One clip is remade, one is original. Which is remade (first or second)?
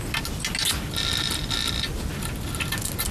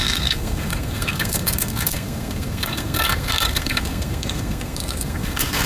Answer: second